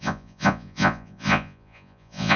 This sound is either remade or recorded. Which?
remade